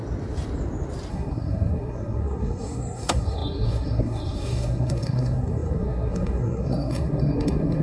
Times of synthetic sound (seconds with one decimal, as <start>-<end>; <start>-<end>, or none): 1.1-7.8